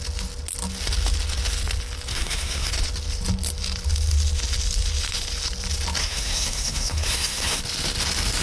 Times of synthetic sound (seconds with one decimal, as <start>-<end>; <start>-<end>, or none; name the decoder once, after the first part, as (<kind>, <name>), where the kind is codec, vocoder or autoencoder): 2.1-2.7 (codec, SNAC); 6.0-7.6